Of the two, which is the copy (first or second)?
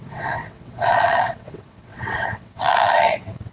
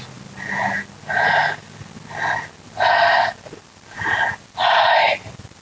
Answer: first